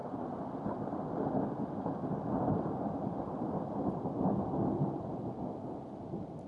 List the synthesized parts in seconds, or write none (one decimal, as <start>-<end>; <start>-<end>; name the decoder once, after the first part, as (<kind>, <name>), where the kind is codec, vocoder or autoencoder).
0.0-3.9 (vocoder, BigVGAN v2)